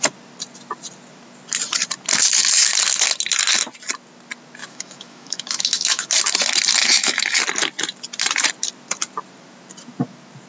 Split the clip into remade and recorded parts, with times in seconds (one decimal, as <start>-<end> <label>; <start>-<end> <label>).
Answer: 0.0-4.6 recorded; 4.6-6.1 remade; 6.1-6.8 recorded; 6.8-7.4 remade; 7.4-10.5 recorded

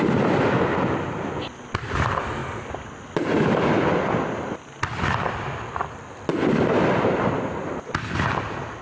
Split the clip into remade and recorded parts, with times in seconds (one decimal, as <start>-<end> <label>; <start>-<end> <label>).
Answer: 0.0-8.8 recorded

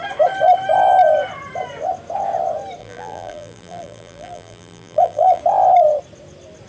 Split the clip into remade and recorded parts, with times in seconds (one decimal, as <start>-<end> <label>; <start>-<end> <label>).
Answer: 0.0-2.8 recorded; 2.8-5.4 remade; 5.4-6.7 recorded

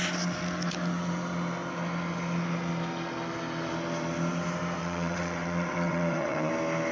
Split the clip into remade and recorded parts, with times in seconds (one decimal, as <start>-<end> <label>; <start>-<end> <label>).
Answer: 0.0-4.8 recorded; 4.8-6.5 remade; 6.5-6.9 recorded